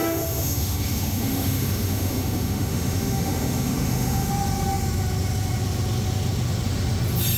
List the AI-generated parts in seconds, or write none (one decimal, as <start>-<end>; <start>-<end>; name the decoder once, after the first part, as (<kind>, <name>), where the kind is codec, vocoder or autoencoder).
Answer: 0.0-4.3 (autoencoder, DAC-VAE)